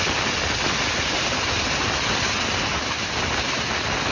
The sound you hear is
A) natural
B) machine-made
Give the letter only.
A